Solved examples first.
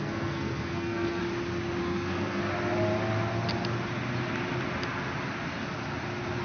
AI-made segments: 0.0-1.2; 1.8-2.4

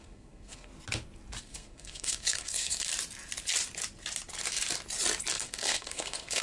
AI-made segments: 0.0-0.7; 1.4-2.9; 5.3-6.4